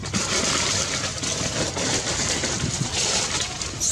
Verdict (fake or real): real